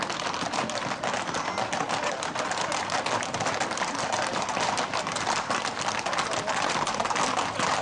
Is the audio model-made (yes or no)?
no